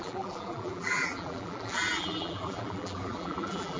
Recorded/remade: remade